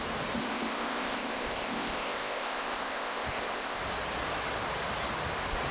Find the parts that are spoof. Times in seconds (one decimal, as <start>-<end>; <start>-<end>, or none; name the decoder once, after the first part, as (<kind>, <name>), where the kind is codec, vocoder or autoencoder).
0.4-3.8 (codec, ZipCodec)